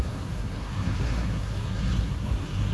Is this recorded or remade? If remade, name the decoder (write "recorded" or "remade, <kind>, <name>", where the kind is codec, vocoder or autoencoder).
remade, codec, SNAC